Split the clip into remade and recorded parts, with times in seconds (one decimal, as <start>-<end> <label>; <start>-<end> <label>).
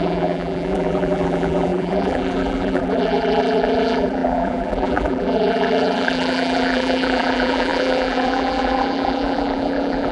0.0-10.1 remade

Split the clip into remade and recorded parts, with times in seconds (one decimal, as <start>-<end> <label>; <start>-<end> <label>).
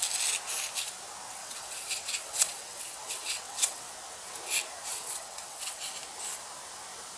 0.0-1.4 recorded; 1.4-3.9 remade; 3.9-4.9 recorded; 4.9-5.9 remade; 5.9-7.2 recorded